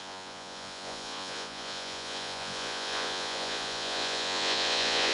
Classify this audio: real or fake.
fake